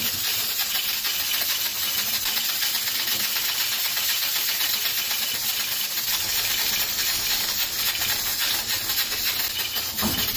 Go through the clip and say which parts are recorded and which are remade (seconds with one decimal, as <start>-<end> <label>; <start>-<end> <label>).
0.0-8.3 remade; 8.3-9.5 recorded; 9.5-10.4 remade